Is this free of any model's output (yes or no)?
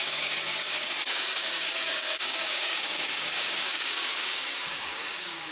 no